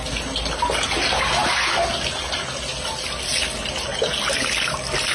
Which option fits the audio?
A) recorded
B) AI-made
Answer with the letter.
A